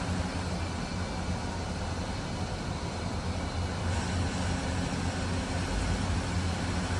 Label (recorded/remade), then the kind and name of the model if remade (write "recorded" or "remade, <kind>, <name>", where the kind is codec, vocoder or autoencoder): recorded